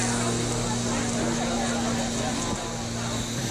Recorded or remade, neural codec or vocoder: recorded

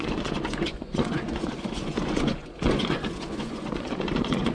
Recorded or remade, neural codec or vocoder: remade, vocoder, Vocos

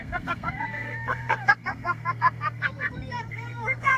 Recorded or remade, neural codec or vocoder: remade, codec, SNAC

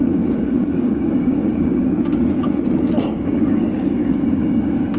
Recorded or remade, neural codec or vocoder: remade, codec, DAC